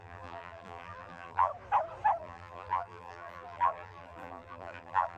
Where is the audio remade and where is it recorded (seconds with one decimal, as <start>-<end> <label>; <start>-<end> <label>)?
0.0-1.5 remade; 1.5-2.2 recorded; 2.2-5.2 remade